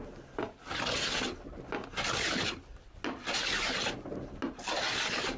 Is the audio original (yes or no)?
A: yes